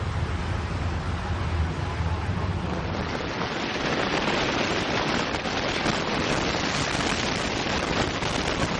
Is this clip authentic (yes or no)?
yes